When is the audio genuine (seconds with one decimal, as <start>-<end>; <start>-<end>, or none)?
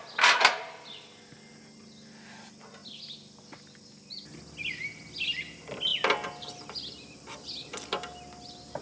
0.0-8.8